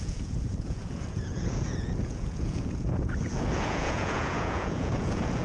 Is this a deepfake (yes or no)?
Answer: yes